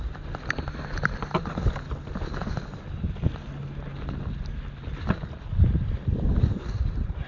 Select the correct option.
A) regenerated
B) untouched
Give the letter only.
B